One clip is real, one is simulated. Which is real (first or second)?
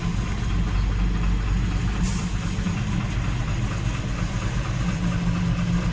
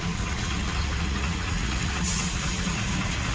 first